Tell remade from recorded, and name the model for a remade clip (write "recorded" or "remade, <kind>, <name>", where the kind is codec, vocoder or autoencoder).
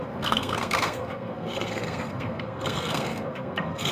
remade, codec, SNAC